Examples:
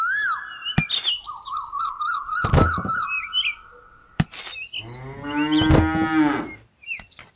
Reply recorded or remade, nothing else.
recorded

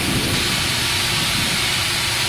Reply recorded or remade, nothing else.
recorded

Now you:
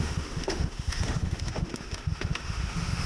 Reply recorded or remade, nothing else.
remade